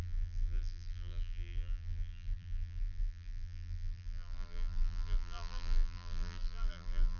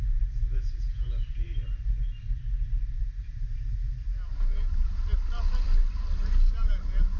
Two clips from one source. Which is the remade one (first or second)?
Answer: first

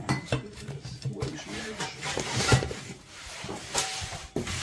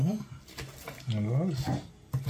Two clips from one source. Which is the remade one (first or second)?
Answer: first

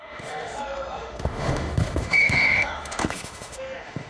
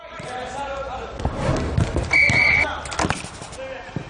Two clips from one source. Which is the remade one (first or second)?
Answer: first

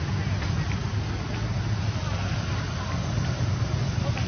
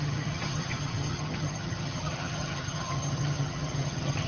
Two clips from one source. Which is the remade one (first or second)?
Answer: second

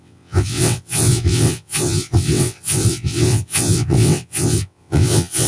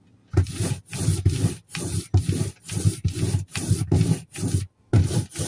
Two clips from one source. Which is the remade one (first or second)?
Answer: first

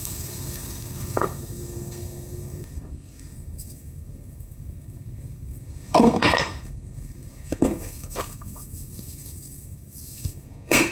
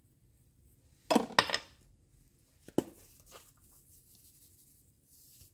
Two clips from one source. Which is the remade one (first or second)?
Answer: first